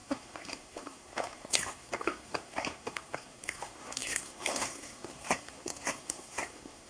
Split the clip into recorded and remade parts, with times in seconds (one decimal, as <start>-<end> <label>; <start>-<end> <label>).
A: 0.0-6.9 remade